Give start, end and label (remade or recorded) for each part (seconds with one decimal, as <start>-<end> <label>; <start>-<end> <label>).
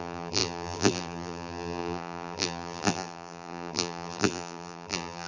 0.0-5.3 remade